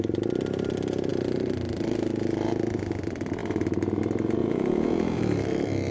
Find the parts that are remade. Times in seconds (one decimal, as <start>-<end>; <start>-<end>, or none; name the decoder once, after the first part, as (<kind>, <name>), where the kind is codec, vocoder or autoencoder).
4.4-5.2 (vocoder, Vocos)

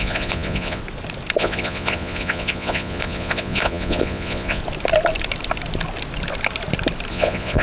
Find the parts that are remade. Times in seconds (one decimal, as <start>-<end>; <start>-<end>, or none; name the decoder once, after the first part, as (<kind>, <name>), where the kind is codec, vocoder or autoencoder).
0.0-0.8 (vocoder, Vocos); 1.4-4.6; 7.1-7.6

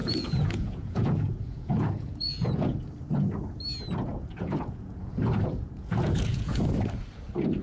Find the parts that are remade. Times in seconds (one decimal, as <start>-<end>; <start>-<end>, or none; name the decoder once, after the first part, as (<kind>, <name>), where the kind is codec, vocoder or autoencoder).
0.0-2.8 (vocoder, Vocos); 4.1-6.6

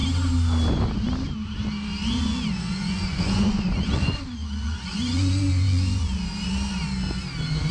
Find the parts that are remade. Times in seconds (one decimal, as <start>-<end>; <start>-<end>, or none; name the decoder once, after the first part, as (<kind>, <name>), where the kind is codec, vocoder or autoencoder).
2.3-6.0 (vocoder, Vocos)

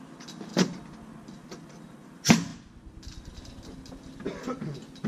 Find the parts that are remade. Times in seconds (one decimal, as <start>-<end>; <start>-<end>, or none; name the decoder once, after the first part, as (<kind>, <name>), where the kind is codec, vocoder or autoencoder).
none

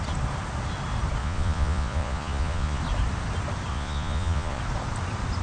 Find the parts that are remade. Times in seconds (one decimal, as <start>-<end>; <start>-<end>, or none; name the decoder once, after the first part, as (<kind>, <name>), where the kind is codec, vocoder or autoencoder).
1.2-2.8 (vocoder, Vocos); 3.7-4.6

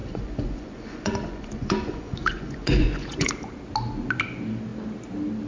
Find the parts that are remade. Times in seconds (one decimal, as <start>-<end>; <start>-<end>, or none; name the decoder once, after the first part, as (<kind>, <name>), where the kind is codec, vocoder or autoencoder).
0.0-3.3 (vocoder, Vocos)

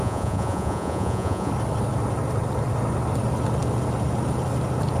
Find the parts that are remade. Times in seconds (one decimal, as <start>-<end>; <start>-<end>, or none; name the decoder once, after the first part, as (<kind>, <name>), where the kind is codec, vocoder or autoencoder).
0.0-1.5 (vocoder, Vocos)